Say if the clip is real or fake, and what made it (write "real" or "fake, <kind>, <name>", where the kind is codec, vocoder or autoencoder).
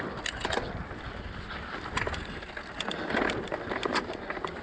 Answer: real